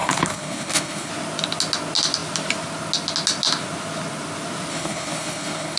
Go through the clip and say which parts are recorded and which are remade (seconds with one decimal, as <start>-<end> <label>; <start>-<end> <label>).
0.0-1.1 remade; 1.1-4.7 recorded; 4.7-5.8 remade

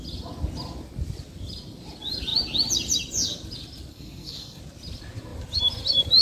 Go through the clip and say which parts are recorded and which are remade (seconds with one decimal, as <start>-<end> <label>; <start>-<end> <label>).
0.0-3.9 recorded; 3.9-4.6 remade; 4.6-6.2 recorded